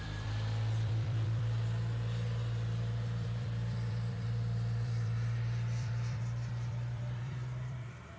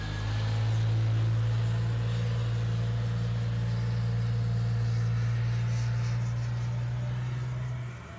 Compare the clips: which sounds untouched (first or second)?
second